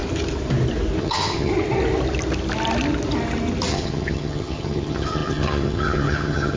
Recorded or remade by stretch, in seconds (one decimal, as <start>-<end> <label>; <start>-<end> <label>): 0.0-1.0 recorded; 1.0-1.5 remade; 1.5-3.7 recorded; 3.7-6.6 remade